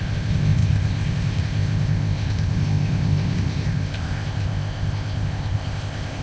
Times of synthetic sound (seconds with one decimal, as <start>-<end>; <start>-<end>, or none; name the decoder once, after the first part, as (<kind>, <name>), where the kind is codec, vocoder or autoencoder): 0.0-6.2 (codec, ZipCodec)